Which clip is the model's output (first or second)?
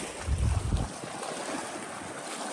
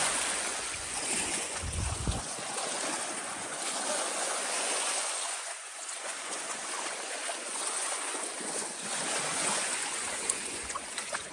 second